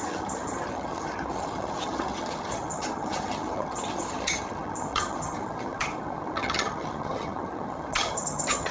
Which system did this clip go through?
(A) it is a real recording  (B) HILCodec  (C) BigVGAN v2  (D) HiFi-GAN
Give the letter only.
D